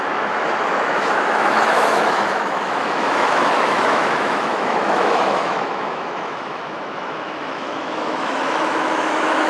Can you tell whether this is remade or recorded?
remade